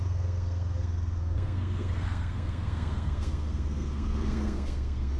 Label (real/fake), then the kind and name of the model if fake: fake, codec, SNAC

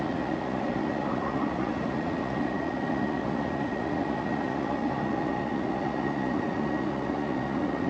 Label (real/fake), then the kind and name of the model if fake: fake, vocoder, Vocos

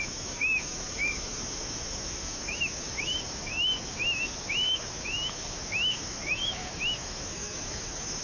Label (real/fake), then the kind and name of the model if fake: fake, autoencoder, DAC-VAE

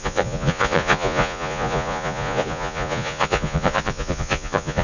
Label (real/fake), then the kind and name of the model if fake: fake, vocoder, Vocos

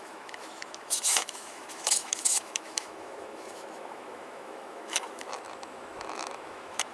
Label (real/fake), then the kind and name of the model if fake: fake, autoencoder, DAC-VAE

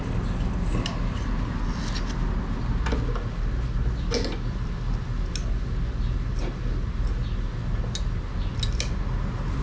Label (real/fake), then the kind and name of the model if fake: real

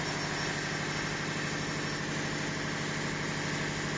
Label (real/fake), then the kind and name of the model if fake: real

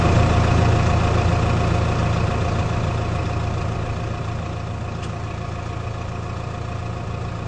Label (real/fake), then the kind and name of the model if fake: real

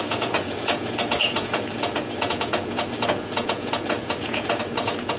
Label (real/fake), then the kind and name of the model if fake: fake, vocoder, Vocos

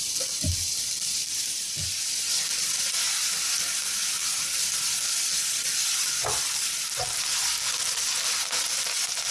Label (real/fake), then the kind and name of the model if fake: real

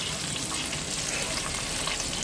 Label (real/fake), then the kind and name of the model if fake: real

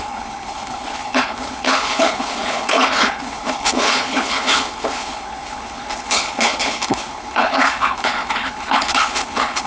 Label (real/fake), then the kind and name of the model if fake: fake, codec, HILCodec